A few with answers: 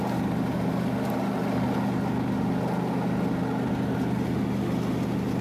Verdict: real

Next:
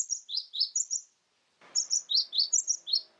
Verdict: real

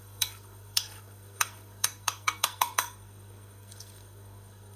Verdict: fake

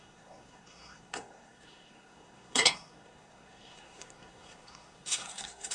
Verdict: fake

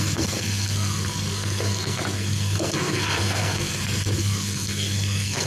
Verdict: fake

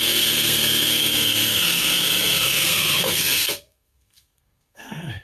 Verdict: fake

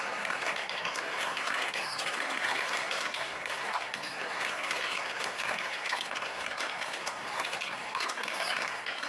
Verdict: fake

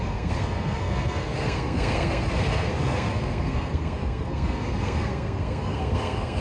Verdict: fake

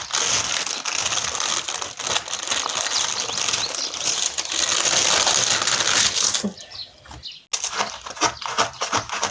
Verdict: real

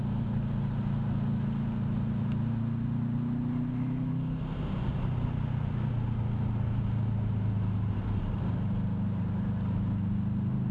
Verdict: real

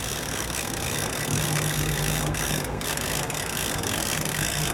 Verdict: fake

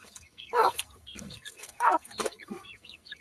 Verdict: fake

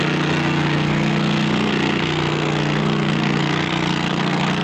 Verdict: fake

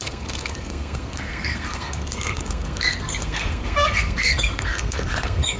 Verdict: fake